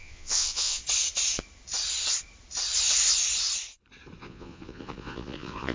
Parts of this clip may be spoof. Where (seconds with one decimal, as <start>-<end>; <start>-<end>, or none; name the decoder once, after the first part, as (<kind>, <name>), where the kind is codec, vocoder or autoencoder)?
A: 0.0-0.8 (vocoder, Vocos); 4.2-5.7